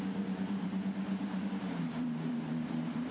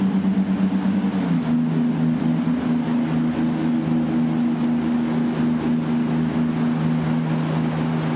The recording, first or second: second